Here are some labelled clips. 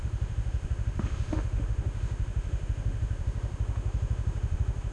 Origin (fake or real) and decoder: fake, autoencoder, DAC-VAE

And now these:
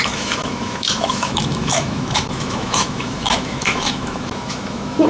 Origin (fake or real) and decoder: fake, autoencoder, DAC-VAE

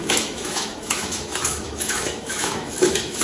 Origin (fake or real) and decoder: fake, autoencoder, DAC-VAE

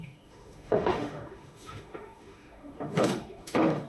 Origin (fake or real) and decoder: fake, autoencoder, DAC-VAE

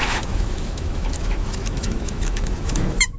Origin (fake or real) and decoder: fake, autoencoder, DAC-VAE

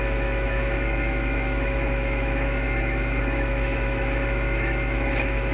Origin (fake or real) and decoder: fake, autoencoder, DAC-VAE